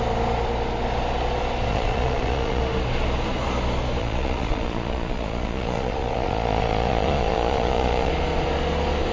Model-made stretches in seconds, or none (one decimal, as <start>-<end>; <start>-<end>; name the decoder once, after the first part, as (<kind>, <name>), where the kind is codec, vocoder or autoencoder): 1.7-2.6 (vocoder, Vocos); 4.0-8.1

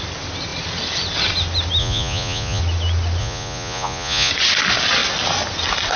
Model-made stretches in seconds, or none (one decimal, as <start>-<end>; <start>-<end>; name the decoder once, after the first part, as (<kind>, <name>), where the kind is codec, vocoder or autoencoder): 1.8-2.6 (vocoder, Vocos); 3.2-4.3

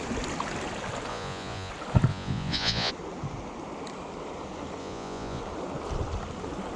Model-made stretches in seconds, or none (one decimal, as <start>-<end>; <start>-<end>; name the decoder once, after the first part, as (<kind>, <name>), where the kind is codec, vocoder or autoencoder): 1.1-1.7 (vocoder, Vocos); 2.1-2.9; 4.8-5.4

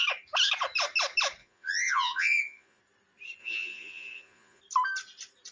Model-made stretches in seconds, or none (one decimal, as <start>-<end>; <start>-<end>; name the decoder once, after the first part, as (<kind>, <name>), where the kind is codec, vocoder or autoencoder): 1.4-2.8 (vocoder, Vocos); 3.4-4.6

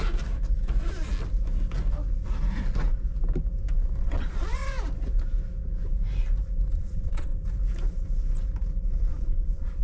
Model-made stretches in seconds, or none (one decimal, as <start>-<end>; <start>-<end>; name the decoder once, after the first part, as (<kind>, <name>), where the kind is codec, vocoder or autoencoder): 4.0-4.6 (vocoder, Vocos); 6.7-7.3; 9.1-9.8

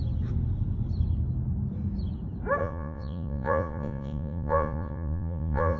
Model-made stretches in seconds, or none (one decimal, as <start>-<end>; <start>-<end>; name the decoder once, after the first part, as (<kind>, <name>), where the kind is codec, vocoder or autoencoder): 2.6-5.8 (vocoder, Vocos)

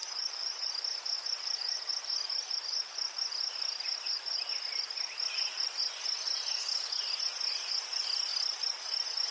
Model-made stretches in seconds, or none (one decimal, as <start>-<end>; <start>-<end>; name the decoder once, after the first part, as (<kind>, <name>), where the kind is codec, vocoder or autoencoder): 0.0-0.7 (vocoder, Vocos)